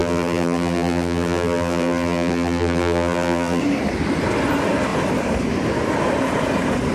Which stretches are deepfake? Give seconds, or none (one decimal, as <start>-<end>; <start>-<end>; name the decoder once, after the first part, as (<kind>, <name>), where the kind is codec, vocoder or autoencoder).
0.0-3.6 (vocoder, BigVGAN v2)